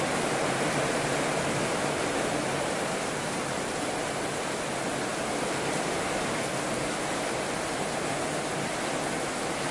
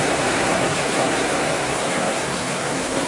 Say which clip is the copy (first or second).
second